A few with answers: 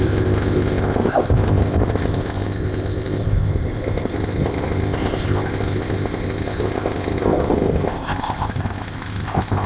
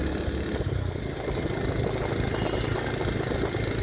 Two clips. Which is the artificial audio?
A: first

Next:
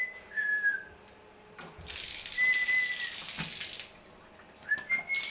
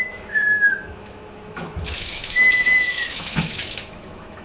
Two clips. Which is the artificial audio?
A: second